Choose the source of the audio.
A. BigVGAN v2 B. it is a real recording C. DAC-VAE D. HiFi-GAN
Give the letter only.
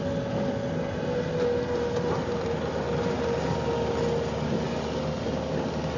B